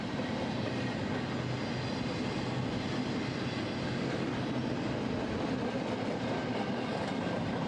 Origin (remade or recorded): recorded